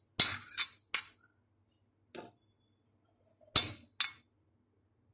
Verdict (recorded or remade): recorded